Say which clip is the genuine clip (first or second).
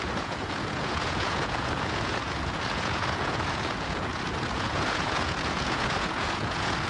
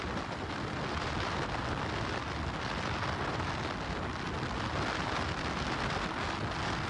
second